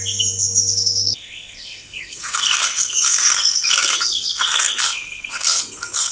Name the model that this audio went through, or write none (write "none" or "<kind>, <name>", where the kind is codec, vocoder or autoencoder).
codec, SNAC